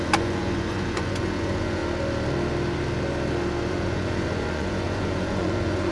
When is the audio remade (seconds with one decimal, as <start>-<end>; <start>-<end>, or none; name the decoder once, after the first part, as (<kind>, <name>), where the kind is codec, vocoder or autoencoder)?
0.0-1.8 (vocoder, Vocos); 3.7-5.9